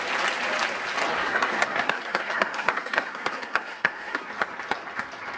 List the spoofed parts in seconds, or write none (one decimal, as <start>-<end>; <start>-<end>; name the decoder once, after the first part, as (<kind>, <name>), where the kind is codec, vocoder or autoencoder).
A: 1.2-4.3 (codec, SNAC)